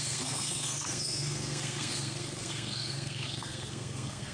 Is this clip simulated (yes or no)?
yes